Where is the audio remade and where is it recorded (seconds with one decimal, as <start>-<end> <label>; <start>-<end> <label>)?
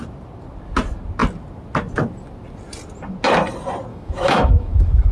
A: 0.0-3.9 recorded; 3.9-5.1 remade